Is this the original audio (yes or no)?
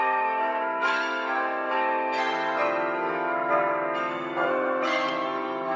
no